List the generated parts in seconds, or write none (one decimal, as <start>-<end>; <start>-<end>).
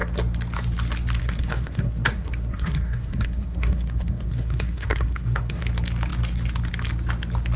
1.2-5.6